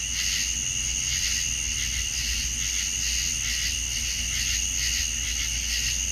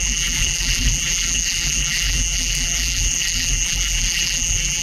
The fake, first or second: second